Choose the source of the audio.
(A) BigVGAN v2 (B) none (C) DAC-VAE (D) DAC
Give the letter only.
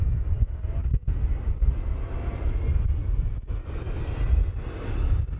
B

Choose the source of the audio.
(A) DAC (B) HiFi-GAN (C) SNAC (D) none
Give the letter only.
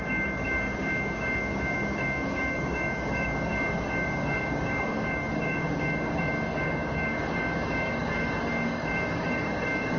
A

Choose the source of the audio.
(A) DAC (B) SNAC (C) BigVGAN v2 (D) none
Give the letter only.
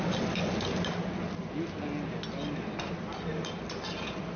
D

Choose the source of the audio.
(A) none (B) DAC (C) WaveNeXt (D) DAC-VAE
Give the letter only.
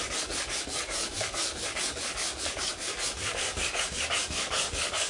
B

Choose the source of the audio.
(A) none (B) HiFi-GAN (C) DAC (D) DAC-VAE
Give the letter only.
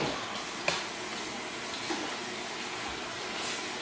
A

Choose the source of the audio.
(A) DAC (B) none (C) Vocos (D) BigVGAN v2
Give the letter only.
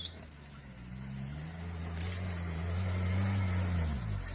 B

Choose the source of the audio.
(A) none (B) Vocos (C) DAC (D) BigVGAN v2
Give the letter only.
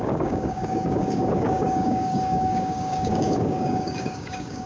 C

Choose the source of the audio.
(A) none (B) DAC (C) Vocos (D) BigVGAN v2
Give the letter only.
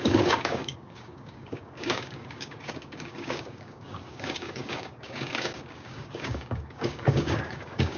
B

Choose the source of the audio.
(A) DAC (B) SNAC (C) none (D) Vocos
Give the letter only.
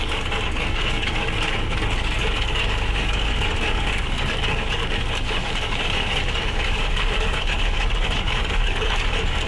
A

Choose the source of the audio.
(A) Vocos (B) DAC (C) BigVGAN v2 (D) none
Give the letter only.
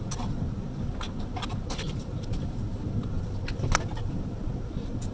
D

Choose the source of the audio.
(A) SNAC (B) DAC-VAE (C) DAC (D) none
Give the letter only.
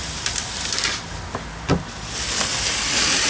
D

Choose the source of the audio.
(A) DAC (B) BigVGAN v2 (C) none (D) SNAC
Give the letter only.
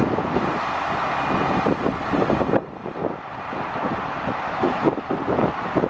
C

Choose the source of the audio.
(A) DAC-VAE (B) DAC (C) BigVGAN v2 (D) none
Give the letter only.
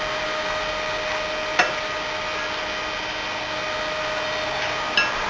D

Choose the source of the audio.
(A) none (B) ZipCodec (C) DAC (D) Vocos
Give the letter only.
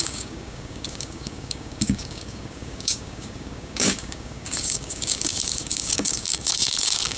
C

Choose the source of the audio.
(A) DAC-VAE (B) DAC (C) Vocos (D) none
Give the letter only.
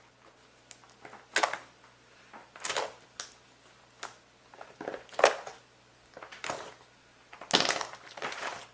D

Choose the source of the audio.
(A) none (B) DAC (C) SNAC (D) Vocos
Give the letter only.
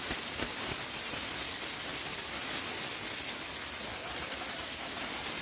A